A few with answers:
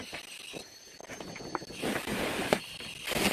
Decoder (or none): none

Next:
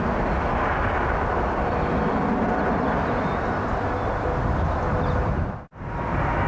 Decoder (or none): none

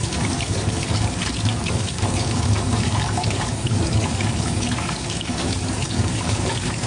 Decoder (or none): codec, DAC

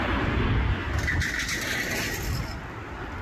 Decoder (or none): none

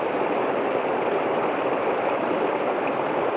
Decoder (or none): none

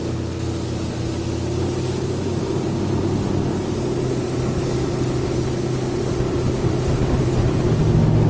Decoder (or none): none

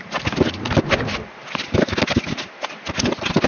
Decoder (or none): none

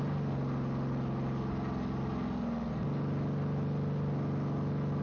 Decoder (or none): none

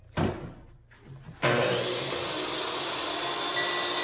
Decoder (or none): none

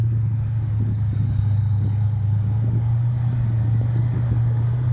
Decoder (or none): codec, DAC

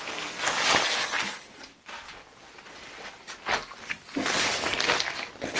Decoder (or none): none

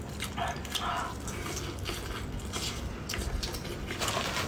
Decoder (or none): none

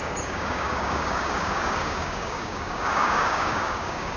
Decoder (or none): codec, DAC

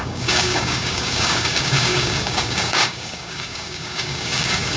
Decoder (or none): codec, DAC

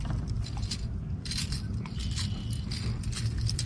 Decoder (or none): none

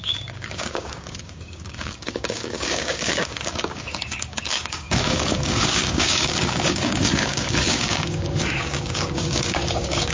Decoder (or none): codec, DAC